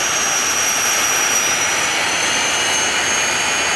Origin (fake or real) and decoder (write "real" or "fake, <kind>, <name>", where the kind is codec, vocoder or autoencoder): real